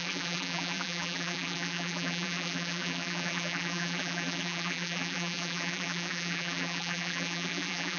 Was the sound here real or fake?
fake